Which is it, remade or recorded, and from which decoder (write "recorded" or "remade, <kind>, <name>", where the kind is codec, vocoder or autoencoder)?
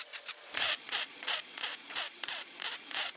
remade, vocoder, Vocos